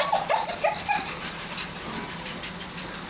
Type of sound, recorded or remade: recorded